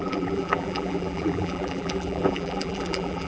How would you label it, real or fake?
fake